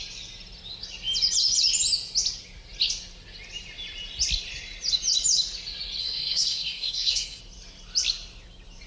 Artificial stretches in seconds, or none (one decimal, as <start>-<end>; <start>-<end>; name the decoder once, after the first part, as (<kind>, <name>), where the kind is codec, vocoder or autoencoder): 6.0-7.4 (codec, SNAC)